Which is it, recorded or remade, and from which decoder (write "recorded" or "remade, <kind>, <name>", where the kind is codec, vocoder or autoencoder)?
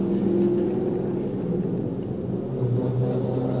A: recorded